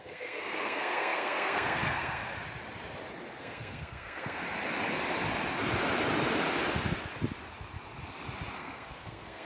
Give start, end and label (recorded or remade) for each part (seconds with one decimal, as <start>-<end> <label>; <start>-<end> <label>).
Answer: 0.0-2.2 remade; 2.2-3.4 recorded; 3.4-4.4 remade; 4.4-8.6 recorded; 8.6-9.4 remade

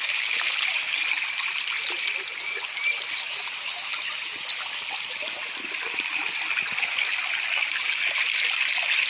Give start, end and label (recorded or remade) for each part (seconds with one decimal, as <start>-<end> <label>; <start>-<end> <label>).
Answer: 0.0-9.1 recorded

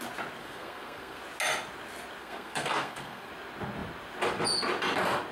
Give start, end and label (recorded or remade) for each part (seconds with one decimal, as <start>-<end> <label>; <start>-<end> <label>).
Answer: 0.0-0.4 recorded; 0.4-1.2 remade; 1.2-2.2 recorded; 2.2-3.3 remade; 3.3-5.3 recorded